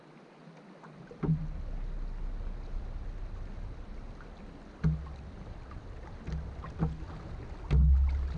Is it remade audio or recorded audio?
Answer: recorded